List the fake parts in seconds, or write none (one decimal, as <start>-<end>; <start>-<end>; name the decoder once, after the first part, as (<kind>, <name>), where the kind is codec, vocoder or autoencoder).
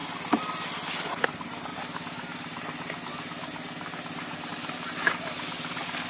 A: none